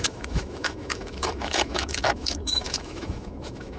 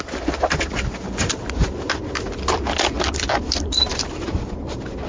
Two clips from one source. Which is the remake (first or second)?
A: first